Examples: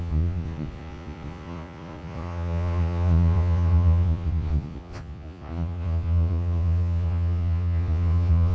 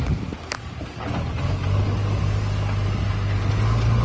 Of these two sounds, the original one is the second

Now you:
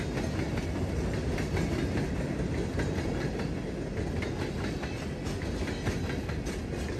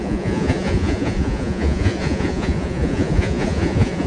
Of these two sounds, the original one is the first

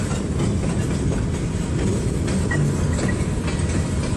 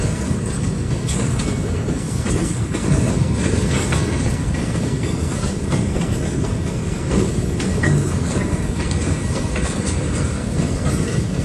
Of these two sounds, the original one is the first